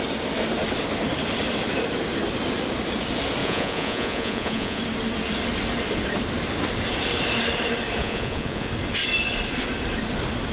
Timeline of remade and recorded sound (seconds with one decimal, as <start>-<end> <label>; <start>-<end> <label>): 0.0-3.4 recorded; 3.4-4.8 remade; 4.8-8.0 recorded; 8.0-8.7 remade; 8.7-10.5 recorded